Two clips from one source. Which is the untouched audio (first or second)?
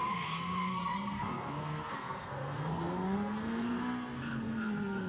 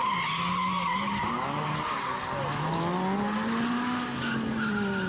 second